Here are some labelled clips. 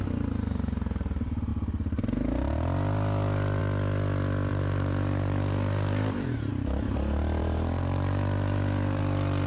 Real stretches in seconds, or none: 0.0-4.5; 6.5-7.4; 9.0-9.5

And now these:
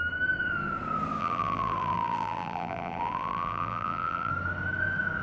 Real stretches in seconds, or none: 0.0-1.2; 4.3-5.2